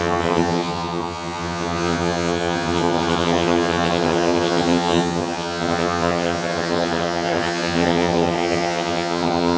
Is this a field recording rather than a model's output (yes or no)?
no